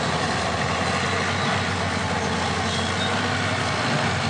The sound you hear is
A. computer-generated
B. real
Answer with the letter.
B